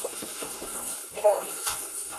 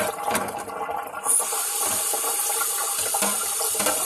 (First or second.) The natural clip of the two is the second